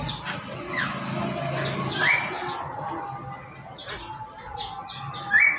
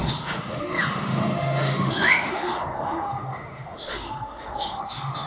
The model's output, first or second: second